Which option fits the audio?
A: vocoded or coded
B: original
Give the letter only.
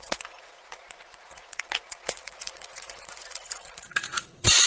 A